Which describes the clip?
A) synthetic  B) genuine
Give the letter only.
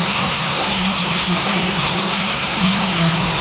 A